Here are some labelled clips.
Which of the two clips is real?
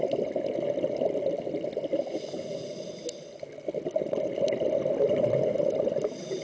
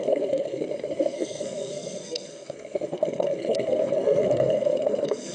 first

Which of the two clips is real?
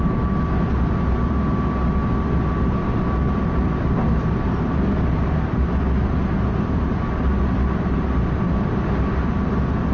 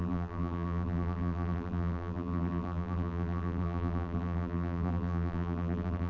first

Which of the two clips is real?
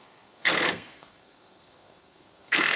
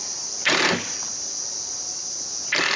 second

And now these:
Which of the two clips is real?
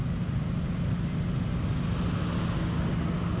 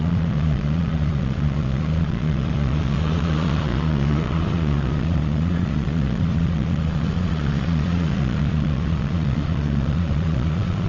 first